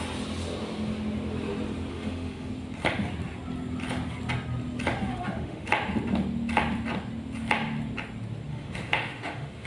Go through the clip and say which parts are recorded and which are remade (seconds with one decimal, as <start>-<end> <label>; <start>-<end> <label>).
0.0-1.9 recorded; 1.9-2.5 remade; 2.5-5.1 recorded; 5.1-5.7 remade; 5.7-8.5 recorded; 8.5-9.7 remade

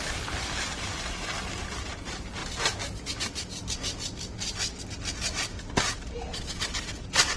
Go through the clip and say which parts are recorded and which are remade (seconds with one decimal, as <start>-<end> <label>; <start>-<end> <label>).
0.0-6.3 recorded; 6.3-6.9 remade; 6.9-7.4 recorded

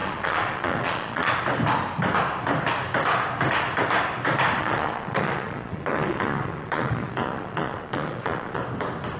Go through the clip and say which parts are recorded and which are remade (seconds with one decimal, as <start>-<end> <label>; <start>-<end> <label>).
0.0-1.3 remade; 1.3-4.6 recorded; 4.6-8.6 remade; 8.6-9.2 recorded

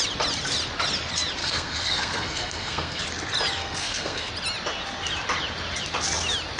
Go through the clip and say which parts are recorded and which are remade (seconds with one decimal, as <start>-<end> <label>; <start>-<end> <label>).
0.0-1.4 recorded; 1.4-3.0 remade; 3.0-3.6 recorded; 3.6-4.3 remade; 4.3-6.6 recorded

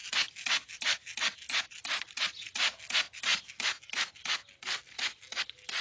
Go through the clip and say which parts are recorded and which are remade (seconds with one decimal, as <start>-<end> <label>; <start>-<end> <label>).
0.0-5.8 recorded

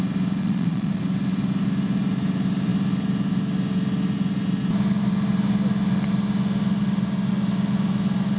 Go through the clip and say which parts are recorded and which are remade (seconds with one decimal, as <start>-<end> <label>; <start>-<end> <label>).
0.0-0.4 recorded; 0.4-1.0 remade; 1.0-8.4 recorded

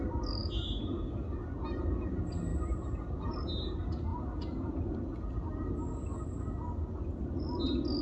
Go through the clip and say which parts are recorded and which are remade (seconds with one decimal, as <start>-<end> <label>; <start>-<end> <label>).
0.0-8.0 recorded

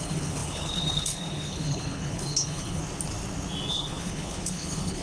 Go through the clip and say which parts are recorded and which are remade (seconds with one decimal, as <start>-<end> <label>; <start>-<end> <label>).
0.0-2.8 remade; 2.8-3.7 recorded; 3.7-5.0 remade